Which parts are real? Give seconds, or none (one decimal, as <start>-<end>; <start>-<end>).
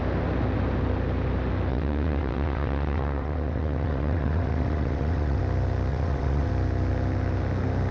0.0-1.7; 5.4-5.9; 6.5-7.9